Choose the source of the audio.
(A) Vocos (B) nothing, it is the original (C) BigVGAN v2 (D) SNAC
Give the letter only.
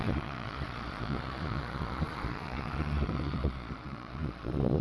A